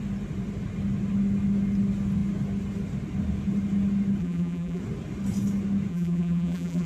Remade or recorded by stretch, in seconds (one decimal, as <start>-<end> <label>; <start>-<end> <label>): 0.0-4.2 recorded; 4.2-4.8 remade; 4.8-5.9 recorded; 5.9-6.9 remade